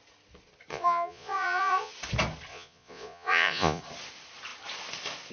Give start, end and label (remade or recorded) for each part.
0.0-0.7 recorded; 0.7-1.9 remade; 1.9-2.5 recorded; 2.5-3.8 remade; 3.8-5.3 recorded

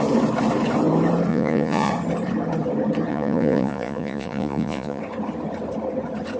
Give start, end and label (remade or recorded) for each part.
0.0-1.3 recorded; 1.3-1.9 remade; 1.9-3.1 recorded; 3.1-5.0 remade; 5.0-6.4 recorded